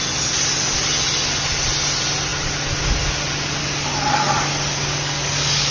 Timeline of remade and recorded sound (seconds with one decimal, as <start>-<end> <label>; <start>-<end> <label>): 0.0-3.6 recorded; 3.6-5.7 remade